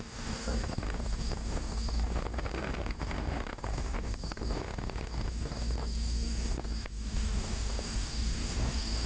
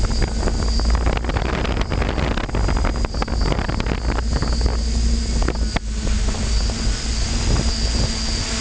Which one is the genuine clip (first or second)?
second